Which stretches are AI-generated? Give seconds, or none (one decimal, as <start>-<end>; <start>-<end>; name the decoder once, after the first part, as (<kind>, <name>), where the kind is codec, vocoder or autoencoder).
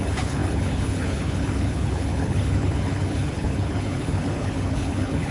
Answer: 0.0-5.3 (codec, HILCodec)